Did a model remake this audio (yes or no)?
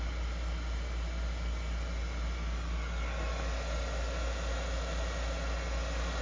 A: no